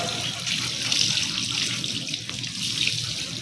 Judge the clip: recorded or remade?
recorded